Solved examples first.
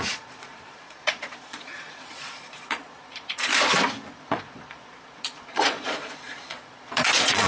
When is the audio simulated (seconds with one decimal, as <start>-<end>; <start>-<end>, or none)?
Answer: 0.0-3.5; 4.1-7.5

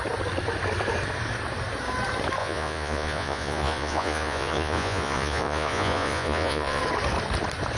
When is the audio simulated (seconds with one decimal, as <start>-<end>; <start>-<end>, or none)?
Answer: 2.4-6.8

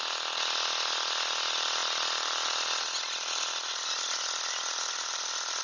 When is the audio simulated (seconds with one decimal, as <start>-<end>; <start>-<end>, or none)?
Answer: none

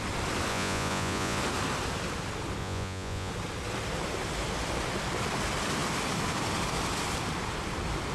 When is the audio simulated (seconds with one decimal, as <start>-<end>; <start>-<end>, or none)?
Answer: 0.5-1.4; 2.6-3.3